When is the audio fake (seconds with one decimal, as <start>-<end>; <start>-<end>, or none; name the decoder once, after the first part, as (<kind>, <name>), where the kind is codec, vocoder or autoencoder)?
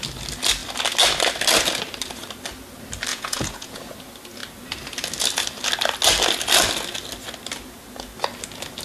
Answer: 3.1-3.8 (vocoder, Vocos)